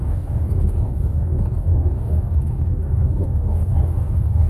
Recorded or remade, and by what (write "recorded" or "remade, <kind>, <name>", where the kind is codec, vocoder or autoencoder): remade, codec, DAC